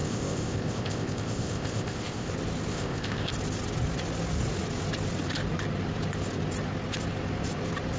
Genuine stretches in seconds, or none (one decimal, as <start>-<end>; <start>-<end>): 2.3-2.7; 3.3-8.0